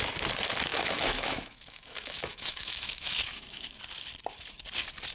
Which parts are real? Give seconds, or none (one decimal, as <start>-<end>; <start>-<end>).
0.0-0.7; 3.8-5.1